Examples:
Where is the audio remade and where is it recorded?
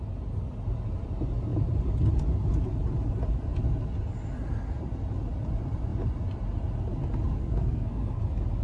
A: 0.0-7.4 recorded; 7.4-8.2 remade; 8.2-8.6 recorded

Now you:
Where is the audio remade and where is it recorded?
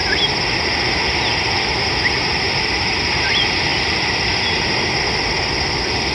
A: 0.0-6.1 recorded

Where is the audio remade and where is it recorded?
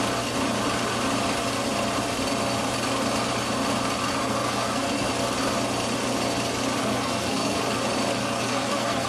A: 0.0-4.1 recorded; 4.1-5.1 remade; 5.1-6.8 recorded; 6.8-7.6 remade; 7.6-8.2 recorded; 8.2-9.1 remade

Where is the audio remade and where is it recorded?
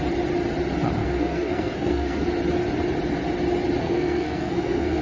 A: 0.0-1.0 recorded; 1.0-2.2 remade; 2.2-3.8 recorded; 3.8-5.0 remade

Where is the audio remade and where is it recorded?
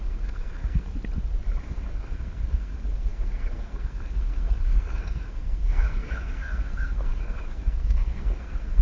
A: 0.0-0.9 remade; 0.9-1.6 recorded; 1.6-8.8 remade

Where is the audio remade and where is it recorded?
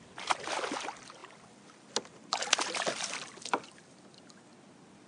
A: 0.0-5.1 recorded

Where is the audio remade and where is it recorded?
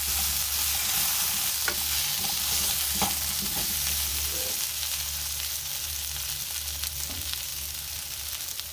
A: 0.0-8.7 recorded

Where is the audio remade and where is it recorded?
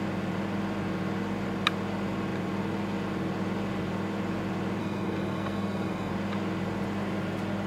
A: 0.0-4.8 recorded; 4.8-6.1 remade; 6.1-7.7 recorded